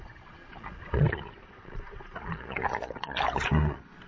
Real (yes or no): no